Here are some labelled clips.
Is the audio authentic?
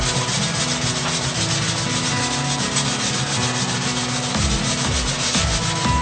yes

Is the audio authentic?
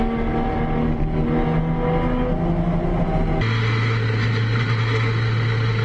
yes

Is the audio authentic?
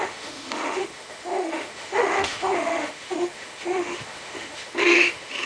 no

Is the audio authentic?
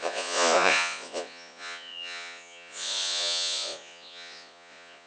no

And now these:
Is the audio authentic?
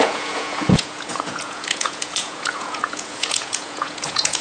no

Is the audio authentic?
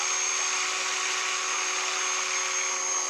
yes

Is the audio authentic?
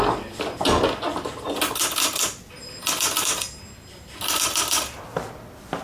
yes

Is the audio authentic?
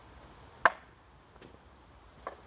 yes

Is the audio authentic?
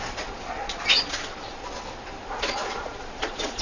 no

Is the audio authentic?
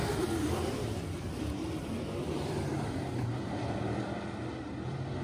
no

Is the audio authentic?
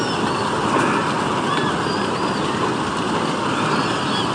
yes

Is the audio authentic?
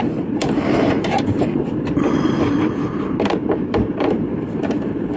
no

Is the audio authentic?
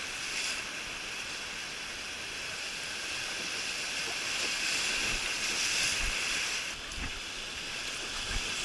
yes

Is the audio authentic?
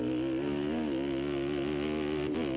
yes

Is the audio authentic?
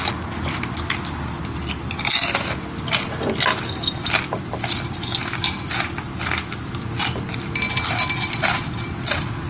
yes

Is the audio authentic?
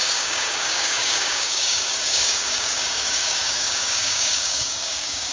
no